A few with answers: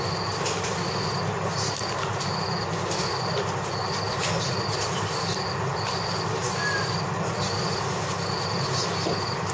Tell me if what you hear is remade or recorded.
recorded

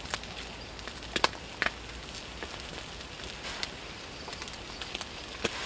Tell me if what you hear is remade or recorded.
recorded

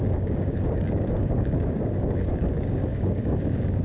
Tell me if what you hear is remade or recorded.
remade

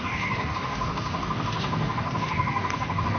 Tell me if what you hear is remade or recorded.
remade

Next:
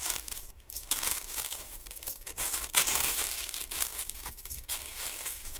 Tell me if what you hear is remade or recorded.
remade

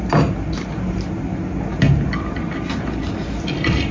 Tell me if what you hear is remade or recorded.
recorded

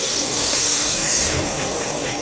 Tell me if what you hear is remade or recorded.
remade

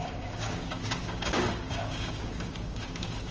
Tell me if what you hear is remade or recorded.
remade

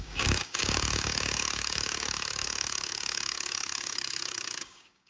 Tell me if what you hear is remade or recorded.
remade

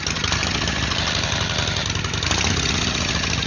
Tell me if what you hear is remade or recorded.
recorded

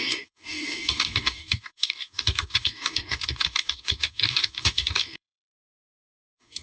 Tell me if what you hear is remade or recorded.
remade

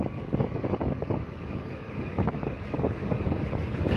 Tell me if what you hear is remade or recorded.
remade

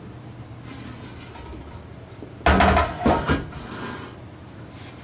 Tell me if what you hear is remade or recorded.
recorded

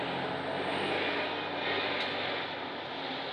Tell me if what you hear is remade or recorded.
recorded